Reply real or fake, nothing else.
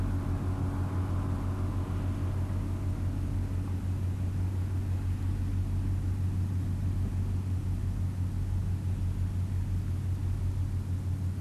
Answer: real